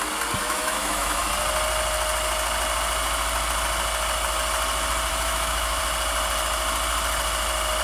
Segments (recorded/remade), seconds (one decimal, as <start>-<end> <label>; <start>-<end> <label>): 0.0-0.4 recorded; 0.4-1.2 remade; 1.2-5.1 recorded; 5.1-5.8 remade; 5.8-7.8 recorded